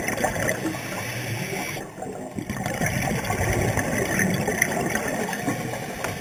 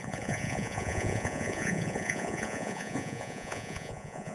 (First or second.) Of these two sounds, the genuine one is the first